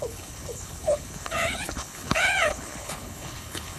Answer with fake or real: fake